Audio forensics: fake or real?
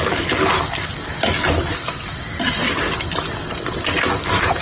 real